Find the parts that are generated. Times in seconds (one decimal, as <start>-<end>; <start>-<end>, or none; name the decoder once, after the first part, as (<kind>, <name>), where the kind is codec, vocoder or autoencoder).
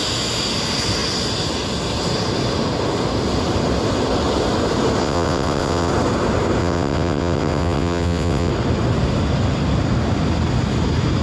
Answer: 5.0-5.9 (vocoder, WaveNeXt); 6.6-8.5